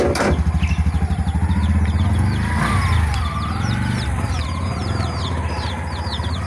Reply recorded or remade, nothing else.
recorded